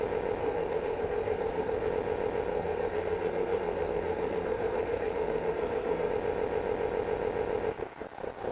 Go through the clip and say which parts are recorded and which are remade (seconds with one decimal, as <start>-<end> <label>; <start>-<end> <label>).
0.0-0.4 recorded; 0.4-1.9 remade; 1.9-2.5 recorded; 2.5-6.1 remade; 6.1-8.5 recorded